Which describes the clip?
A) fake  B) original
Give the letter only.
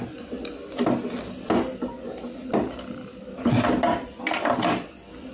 B